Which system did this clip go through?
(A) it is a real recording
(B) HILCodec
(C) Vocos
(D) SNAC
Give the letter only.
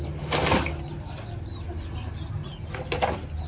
A